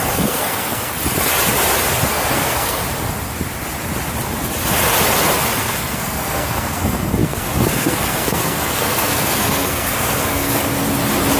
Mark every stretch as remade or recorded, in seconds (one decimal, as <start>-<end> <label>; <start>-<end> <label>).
0.0-0.9 remade; 0.9-2.1 recorded; 2.1-2.8 remade; 2.8-5.6 recorded; 5.6-10.6 remade; 10.6-11.4 recorded